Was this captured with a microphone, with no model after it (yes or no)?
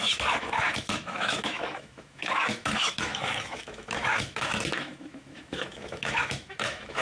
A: no